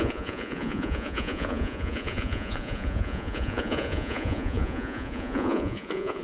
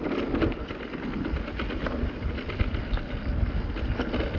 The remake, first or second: first